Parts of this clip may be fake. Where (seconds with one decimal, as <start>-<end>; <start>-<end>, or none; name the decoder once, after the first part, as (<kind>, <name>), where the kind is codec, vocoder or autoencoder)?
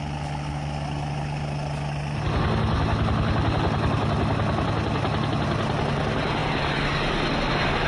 none